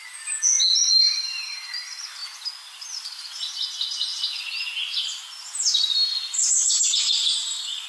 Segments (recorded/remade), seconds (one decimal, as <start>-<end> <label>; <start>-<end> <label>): 0.0-7.9 recorded